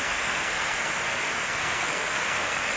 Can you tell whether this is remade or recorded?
remade